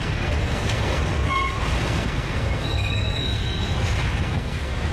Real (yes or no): no